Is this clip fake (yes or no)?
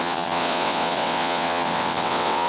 yes